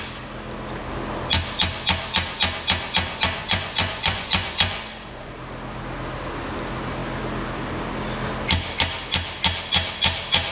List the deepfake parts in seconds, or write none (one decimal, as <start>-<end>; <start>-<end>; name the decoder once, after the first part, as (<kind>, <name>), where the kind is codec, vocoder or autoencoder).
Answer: 3.4-5.3 (vocoder, Vocos)